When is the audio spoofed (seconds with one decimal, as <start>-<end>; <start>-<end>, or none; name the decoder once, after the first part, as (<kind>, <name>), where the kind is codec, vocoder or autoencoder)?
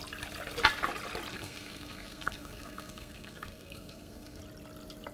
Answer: 1.3-4.4 (codec, SNAC)